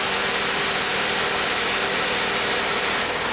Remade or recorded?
recorded